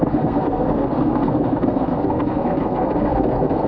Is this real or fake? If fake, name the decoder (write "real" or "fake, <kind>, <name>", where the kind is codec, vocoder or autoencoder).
fake, codec, SNAC